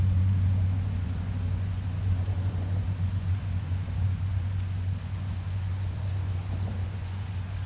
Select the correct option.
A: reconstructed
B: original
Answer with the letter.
A